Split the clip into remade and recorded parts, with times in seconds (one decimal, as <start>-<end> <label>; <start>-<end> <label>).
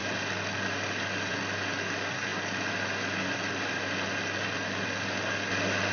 0.0-5.9 recorded